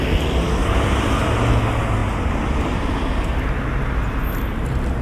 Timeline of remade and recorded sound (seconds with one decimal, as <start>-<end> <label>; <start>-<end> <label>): 0.0-0.6 recorded; 0.6-1.3 remade; 1.3-5.0 recorded